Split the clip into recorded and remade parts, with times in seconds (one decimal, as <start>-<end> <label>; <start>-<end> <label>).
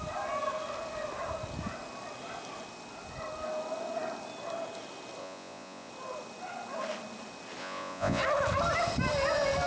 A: 0.0-5.2 recorded; 5.2-5.9 remade; 5.9-7.6 recorded; 7.6-8.2 remade; 8.2-9.7 recorded